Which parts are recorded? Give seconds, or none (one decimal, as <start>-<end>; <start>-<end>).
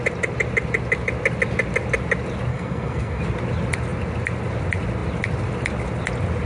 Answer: 0.0-2.5; 3.2-6.5